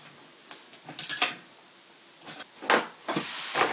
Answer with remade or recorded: recorded